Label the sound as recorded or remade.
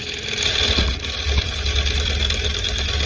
recorded